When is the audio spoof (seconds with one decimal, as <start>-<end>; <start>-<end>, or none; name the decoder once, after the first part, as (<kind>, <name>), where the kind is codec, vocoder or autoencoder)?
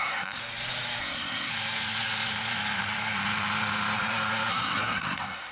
0.0-0.4 (codec, SNAC); 1.0-1.5; 4.5-5.5